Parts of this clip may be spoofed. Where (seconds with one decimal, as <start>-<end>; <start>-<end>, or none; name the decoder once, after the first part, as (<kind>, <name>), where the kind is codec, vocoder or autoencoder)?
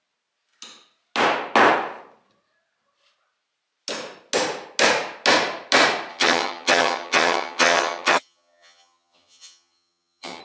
6.1-10.4 (vocoder, HiFi-GAN)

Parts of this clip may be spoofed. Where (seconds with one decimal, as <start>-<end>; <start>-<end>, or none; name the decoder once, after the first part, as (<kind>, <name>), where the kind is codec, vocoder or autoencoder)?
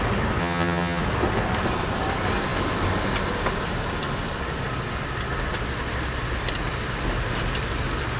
0.4-1.0 (vocoder, HiFi-GAN)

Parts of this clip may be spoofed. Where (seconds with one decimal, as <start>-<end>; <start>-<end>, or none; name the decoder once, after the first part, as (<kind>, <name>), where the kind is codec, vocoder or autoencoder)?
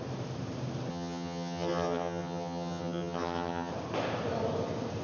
0.9-3.7 (vocoder, HiFi-GAN)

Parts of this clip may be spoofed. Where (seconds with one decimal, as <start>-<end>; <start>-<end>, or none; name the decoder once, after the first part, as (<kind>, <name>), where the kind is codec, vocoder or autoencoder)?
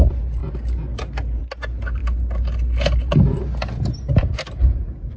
none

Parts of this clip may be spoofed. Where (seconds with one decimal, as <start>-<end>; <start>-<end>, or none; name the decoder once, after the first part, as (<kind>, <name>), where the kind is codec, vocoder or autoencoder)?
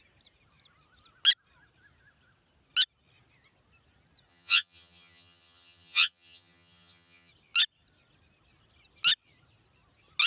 4.3-7.3 (vocoder, HiFi-GAN)